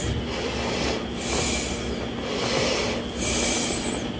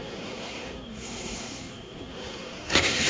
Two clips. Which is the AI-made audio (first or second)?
second